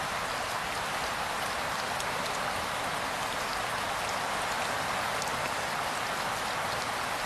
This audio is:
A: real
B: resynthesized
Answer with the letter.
A